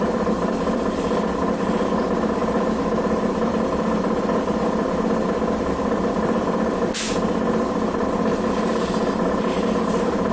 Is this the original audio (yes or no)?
no